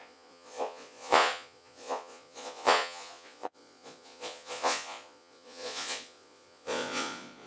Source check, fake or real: fake